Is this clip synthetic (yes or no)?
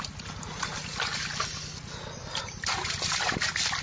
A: no